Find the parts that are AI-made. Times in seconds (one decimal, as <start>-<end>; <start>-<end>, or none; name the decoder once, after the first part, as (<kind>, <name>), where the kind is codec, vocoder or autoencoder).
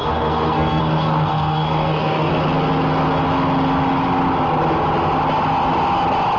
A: 0.0-2.3 (codec, SNAC)